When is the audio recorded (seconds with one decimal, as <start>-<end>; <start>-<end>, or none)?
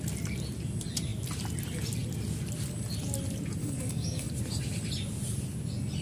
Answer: 0.0-3.6; 4.3-6.0